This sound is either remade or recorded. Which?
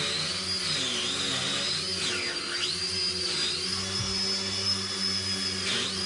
recorded